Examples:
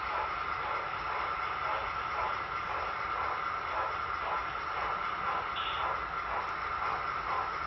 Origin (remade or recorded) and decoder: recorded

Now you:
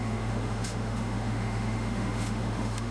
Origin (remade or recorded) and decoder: remade, autoencoder, DAC-VAE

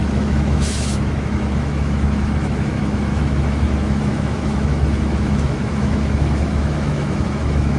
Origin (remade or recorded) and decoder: remade, autoencoder, DAC-VAE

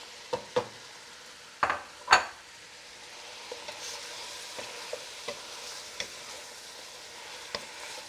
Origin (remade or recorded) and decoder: recorded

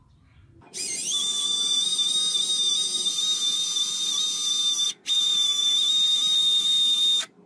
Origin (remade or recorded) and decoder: recorded